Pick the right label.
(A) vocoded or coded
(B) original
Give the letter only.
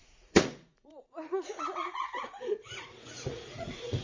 A